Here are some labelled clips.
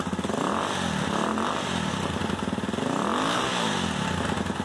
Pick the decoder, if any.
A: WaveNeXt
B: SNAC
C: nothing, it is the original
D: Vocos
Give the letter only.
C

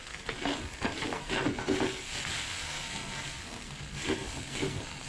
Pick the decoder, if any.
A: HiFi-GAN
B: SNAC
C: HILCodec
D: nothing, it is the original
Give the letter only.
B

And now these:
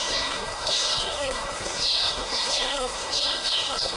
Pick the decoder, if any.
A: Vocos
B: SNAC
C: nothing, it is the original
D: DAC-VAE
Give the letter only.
B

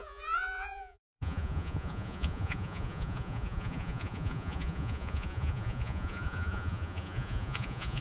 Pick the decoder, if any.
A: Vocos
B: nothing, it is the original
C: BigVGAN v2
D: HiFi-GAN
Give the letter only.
A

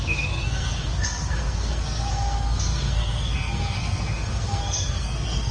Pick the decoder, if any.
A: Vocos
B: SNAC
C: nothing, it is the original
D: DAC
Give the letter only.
B